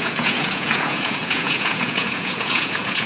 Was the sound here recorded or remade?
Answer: remade